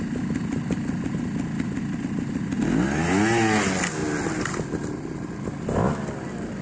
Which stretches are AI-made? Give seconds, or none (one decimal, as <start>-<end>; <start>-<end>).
none